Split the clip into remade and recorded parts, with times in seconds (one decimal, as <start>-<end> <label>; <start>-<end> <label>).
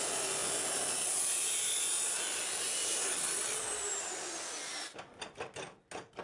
0.0-6.2 recorded